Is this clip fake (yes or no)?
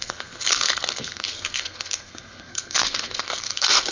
yes